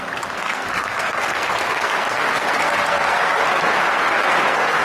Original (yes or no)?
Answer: no